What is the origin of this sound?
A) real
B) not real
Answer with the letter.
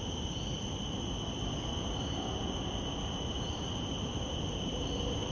A